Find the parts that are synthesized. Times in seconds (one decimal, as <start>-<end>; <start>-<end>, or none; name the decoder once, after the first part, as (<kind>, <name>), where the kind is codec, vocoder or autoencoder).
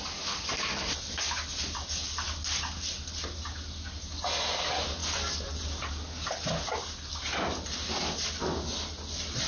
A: none